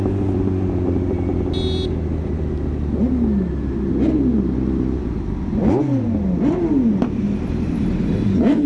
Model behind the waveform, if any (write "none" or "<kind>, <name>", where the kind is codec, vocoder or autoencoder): none